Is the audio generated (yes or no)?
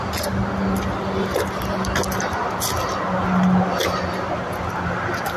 no